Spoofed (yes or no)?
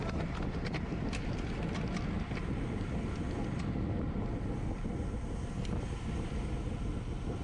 no